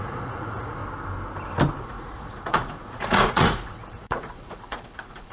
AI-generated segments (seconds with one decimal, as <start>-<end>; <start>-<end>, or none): 0.0-0.8; 1.8-5.3